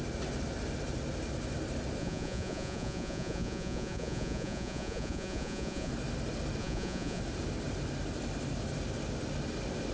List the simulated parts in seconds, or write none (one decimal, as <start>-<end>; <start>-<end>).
2.0-5.9; 6.6-7.2